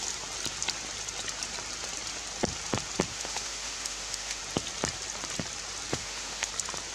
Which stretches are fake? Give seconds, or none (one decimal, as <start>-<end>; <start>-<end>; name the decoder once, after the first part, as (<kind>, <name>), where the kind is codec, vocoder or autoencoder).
3.1-4.4 (autoencoder, DAC-VAE); 5.9-6.5